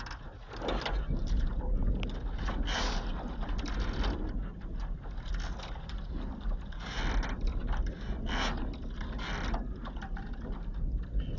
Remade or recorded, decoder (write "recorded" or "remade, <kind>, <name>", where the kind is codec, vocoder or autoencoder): recorded